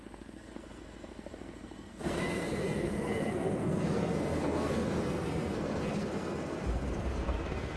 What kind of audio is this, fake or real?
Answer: fake